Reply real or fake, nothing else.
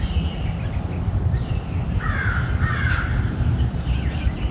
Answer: real